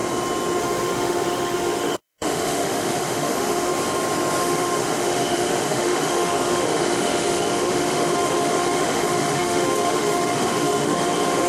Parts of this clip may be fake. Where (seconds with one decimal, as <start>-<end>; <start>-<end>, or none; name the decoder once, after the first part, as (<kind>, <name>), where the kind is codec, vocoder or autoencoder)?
0.6-3.7 (autoencoder, DAC-VAE); 4.4-11.5

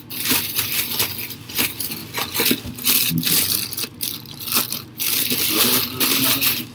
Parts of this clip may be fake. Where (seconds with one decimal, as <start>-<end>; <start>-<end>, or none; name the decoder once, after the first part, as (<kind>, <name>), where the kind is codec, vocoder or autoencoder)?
2.0-3.1 (vocoder, BigVGAN v2)

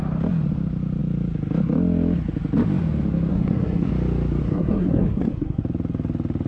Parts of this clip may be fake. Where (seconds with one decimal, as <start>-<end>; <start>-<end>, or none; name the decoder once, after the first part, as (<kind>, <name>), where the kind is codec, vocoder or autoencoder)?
3.3-3.9 (codec, SNAC); 4.4-5.6

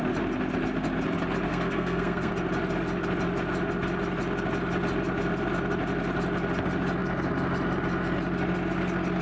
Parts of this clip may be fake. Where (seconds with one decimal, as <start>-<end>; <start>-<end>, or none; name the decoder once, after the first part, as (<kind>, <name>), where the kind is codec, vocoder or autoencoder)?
1.5-2.3 (codec, SNAC)

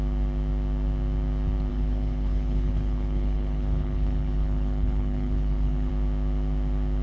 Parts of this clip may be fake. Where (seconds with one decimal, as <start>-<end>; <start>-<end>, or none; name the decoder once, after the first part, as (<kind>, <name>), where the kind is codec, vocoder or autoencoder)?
1.7-5.9 (codec, HILCodec)